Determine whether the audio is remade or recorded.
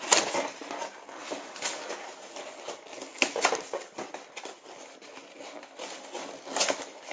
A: recorded